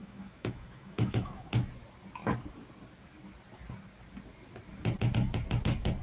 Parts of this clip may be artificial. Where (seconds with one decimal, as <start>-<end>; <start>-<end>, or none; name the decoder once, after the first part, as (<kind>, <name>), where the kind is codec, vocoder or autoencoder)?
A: 0.0-1.5 (autoencoder, DAC-VAE)